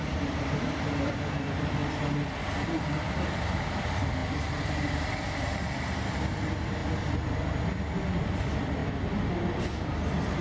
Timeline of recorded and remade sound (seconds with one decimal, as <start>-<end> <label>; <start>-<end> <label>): 0.0-1.8 remade; 1.8-3.0 recorded; 3.0-4.2 remade; 4.2-5.3 recorded; 5.3-6.8 remade; 6.8-8.1 recorded; 8.1-8.8 remade; 8.8-9.7 recorded; 9.7-10.4 remade